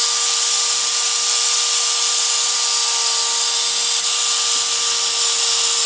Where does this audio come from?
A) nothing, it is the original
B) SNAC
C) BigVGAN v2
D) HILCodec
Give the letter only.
A